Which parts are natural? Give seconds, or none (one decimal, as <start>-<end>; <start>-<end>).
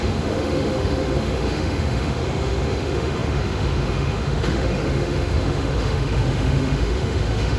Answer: none